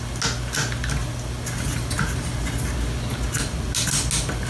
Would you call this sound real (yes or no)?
yes